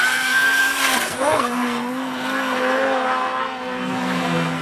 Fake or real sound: fake